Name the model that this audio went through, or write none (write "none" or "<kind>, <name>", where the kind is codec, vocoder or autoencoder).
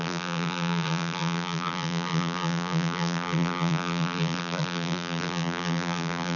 vocoder, BigVGAN v2